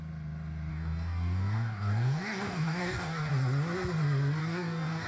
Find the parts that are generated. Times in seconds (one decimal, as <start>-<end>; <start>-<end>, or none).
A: 0.7-3.3; 4.4-5.1